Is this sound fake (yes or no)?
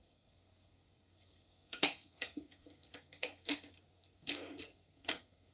yes